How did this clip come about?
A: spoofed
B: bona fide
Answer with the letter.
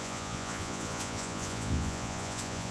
A